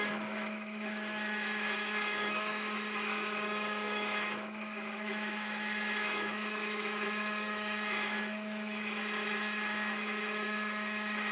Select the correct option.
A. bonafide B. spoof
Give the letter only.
B